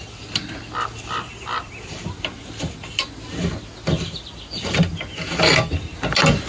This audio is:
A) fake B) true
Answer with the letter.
B